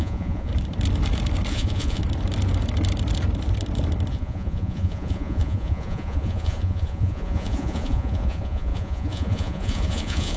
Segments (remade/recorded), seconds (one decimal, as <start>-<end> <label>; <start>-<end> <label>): 0.0-0.5 remade; 0.5-1.5 recorded; 1.5-2.0 remade; 2.0-4.1 recorded; 4.1-10.4 remade